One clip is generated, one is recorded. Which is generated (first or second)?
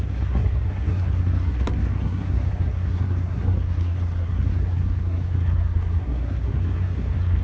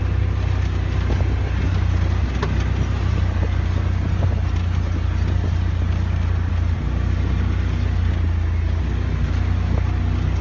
first